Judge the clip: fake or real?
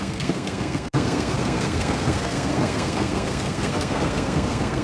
fake